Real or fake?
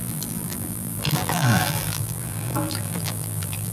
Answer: fake